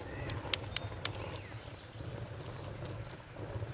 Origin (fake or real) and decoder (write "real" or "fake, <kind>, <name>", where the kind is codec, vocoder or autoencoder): real